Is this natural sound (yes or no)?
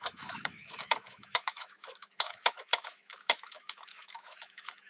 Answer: no